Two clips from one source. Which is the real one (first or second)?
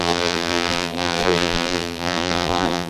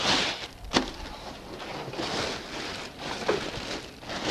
second